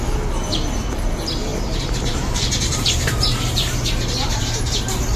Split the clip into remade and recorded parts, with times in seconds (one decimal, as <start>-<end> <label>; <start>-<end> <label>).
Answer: 0.0-1.5 recorded; 1.5-4.6 remade; 4.6-5.2 recorded